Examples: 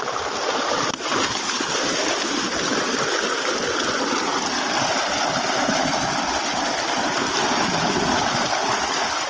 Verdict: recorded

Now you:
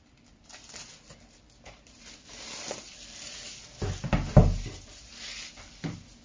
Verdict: recorded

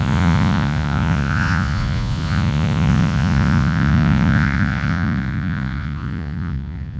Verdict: remade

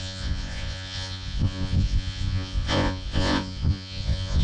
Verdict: remade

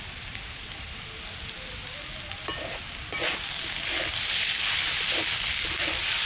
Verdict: recorded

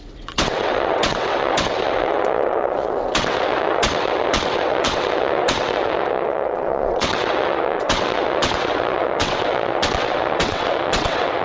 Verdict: remade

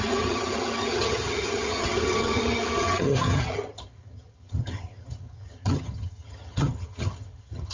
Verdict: remade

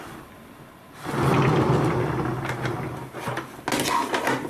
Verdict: recorded